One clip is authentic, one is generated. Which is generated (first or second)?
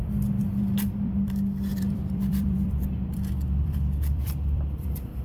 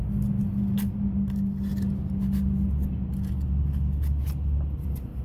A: first